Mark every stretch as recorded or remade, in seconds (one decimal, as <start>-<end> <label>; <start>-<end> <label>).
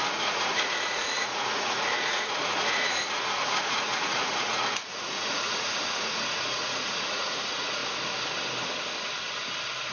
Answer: 0.0-7.8 remade; 7.8-9.9 recorded